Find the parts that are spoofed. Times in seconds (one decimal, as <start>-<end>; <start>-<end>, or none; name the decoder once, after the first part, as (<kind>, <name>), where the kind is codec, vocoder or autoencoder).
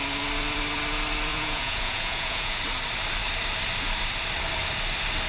1.3-2.6 (vocoder, Vocos)